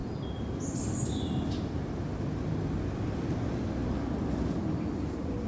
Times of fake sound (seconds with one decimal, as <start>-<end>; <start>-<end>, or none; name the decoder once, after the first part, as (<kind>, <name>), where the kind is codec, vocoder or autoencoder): none